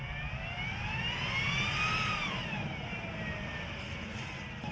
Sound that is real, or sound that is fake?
real